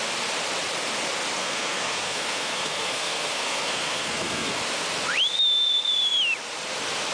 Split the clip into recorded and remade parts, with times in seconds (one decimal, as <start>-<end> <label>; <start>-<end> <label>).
0.0-1.4 recorded; 1.4-4.6 remade; 4.6-7.1 recorded